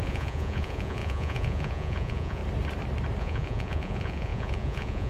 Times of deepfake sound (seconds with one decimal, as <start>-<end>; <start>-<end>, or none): 0.0-2.4; 3.2-5.1

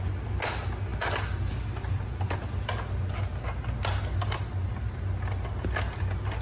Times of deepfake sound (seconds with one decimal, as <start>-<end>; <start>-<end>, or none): none

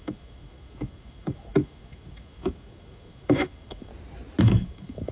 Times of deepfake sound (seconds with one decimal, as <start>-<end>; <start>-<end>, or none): 0.0-3.9; 4.4-5.1